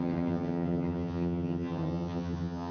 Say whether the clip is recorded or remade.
remade